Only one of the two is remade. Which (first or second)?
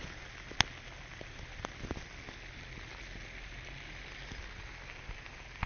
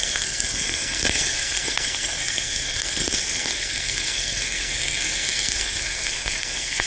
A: second